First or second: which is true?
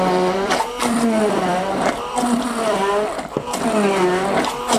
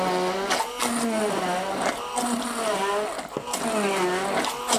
second